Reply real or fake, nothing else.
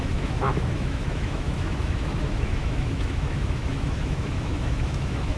fake